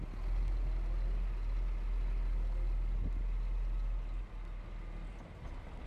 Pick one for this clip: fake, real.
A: real